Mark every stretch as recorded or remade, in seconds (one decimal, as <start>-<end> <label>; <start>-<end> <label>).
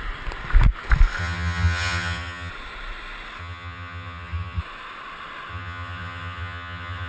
0.0-1.2 recorded; 1.2-2.5 remade; 2.5-3.4 recorded; 3.4-4.6 remade; 4.6-5.5 recorded; 5.5-7.1 remade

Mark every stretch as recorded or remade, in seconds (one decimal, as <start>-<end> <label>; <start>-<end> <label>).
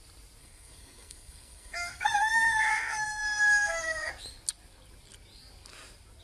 0.0-0.4 recorded; 0.4-4.1 remade; 4.1-6.2 recorded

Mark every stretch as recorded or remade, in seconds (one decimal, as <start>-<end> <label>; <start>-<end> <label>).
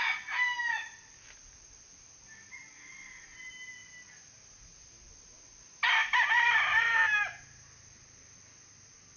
0.0-3.3 recorded; 3.3-5.1 remade; 5.1-6.0 recorded; 6.0-6.7 remade; 6.7-9.2 recorded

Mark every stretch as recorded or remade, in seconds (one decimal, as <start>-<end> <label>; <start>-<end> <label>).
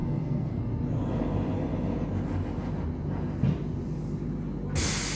0.0-0.6 remade; 0.6-5.1 recorded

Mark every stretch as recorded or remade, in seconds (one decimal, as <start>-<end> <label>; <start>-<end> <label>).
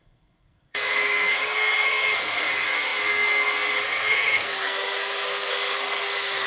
0.0-6.5 remade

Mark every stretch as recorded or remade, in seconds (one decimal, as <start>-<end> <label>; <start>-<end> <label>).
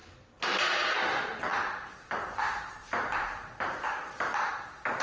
0.0-5.0 recorded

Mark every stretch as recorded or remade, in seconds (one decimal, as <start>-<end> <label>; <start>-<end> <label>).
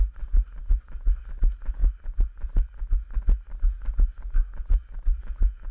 0.0-5.7 recorded